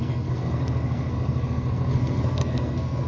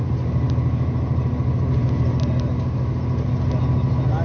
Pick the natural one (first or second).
second